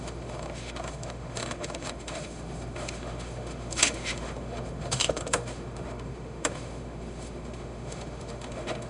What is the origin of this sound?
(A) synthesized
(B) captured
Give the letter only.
A